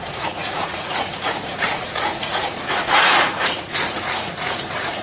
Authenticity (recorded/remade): remade